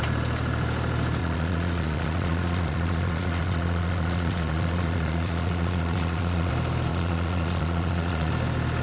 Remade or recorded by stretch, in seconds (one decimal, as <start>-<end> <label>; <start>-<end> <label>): 0.0-1.2 recorded; 1.2-6.5 remade; 6.5-6.9 recorded; 6.9-8.3 remade; 8.3-8.8 recorded